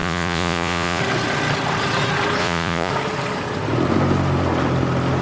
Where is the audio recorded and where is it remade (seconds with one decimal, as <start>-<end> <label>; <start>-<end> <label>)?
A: 0.0-1.0 remade; 1.0-2.4 recorded; 2.4-2.9 remade; 2.9-5.2 recorded